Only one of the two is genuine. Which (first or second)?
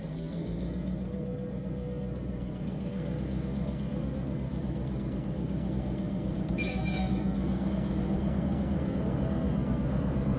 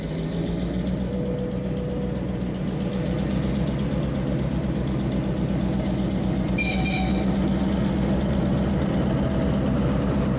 second